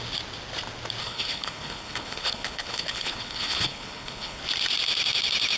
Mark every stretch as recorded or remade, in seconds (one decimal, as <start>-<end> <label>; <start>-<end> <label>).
0.0-1.0 recorded; 1.0-4.4 remade; 4.4-5.6 recorded